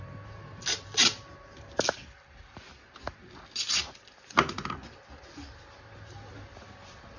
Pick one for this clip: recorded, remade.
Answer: recorded